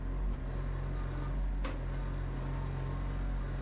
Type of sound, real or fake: real